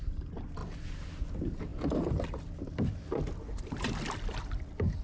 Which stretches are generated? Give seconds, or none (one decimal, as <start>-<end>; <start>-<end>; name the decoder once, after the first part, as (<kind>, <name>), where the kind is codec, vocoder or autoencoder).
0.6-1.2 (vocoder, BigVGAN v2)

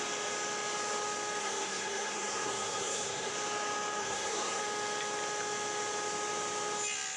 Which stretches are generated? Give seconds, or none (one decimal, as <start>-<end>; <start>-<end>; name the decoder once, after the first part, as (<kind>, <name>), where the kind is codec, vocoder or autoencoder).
1.4-3.3 (codec, SNAC); 4.0-4.6

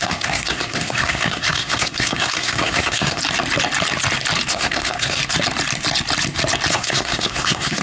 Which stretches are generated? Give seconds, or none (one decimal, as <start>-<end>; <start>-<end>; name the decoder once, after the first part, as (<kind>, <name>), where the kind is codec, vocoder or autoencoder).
0.0-3.2 (codec, SNAC); 4.5-5.2; 6.7-7.8

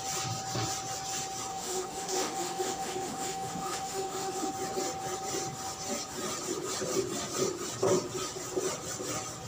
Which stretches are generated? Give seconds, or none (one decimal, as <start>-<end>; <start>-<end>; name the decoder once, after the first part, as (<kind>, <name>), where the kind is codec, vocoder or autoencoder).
1.5-4.5 (autoencoder, DAC-VAE)

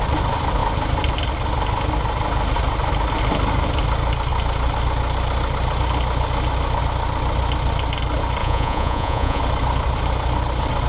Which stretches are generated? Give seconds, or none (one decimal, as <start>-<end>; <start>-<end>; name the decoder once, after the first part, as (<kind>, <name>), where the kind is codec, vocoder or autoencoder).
8.4-9.4 (vocoder, Vocos)